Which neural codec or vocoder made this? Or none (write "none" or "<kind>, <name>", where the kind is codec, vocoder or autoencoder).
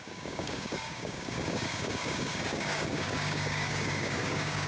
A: codec, DAC